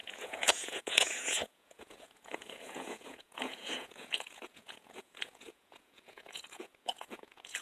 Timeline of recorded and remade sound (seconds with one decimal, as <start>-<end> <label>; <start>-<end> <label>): 0.0-7.6 remade